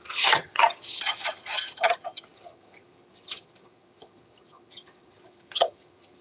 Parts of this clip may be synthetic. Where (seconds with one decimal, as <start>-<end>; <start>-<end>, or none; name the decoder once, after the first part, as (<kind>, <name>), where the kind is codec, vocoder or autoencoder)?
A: 0.0-6.2 (vocoder, HiFi-GAN)